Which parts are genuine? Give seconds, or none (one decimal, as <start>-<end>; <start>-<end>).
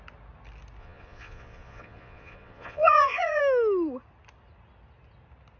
0.0-0.8; 3.4-5.6